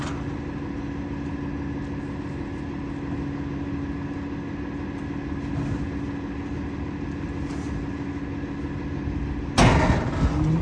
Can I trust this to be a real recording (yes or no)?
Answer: yes